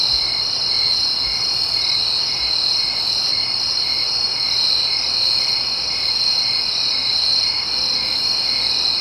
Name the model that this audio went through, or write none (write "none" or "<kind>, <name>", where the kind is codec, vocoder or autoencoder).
none